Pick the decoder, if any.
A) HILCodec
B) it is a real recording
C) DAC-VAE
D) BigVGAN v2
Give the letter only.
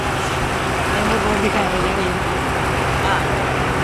B